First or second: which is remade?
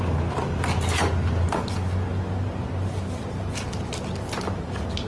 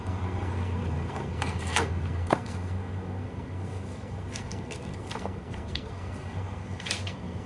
second